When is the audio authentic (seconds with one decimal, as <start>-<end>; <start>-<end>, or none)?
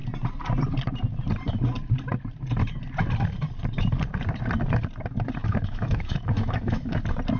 0.0-5.4; 7.0-7.4